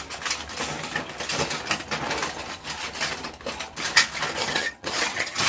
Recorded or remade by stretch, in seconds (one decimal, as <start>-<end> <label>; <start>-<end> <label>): 0.0-4.4 recorded; 4.4-5.5 remade